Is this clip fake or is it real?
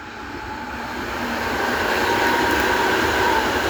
real